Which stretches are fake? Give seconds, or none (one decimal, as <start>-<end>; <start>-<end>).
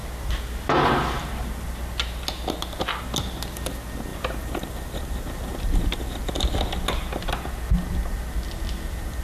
4.1-6.3